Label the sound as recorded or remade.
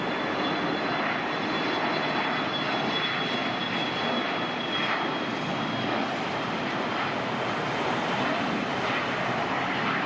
recorded